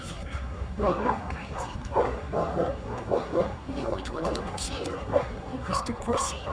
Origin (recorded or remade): remade